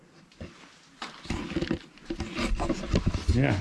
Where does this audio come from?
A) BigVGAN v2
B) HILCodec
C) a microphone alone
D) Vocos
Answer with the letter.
C